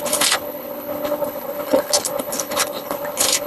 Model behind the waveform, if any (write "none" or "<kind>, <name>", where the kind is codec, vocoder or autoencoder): codec, HILCodec